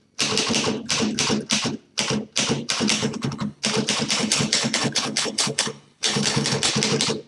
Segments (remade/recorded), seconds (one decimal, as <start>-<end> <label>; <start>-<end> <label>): 0.0-2.9 recorded; 2.9-3.6 remade; 3.6-4.2 recorded; 4.2-6.7 remade; 6.7-7.3 recorded